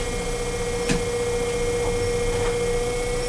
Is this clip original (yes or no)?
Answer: yes